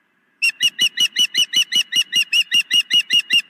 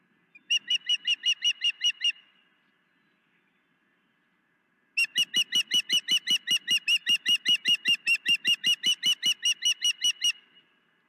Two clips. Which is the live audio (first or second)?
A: second